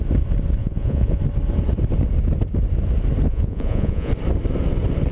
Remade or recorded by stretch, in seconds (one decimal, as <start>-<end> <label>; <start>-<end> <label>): 0.0-0.6 recorded; 0.6-1.2 remade; 1.2-3.3 recorded; 3.3-4.1 remade; 4.1-5.1 recorded